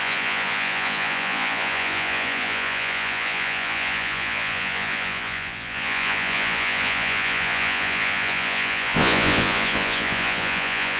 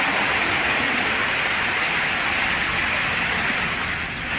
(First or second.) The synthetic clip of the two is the first